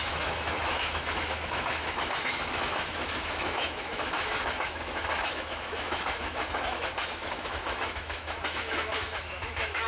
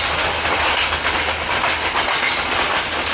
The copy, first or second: first